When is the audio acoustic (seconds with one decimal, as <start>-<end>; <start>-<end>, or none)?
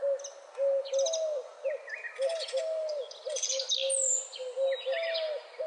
0.0-5.7